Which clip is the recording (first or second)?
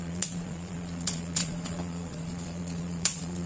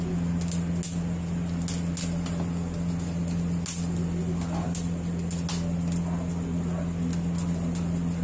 second